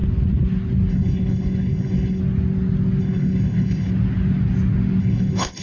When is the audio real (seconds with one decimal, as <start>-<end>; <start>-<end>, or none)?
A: 0.0-0.9; 2.2-3.0; 3.9-5.0